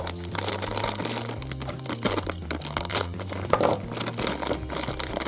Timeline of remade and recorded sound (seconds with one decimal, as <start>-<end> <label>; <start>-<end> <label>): 0.0-2.9 recorded; 2.9-3.6 remade; 3.6-5.3 recorded

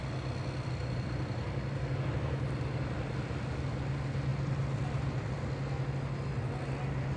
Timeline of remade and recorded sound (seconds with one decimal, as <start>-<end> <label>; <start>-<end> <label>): 0.0-0.8 recorded; 0.8-1.4 remade; 1.4-7.2 recorded

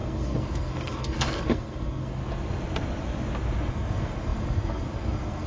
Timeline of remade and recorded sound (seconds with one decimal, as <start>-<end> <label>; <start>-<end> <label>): 0.0-2.2 remade; 2.2-3.7 recorded; 3.7-5.5 remade